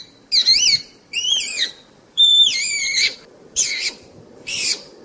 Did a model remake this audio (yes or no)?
yes